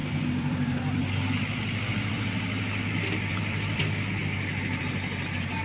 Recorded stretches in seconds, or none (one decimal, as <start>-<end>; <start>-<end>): 2.1-3.3; 3.8-5.6